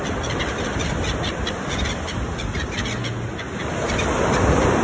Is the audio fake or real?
real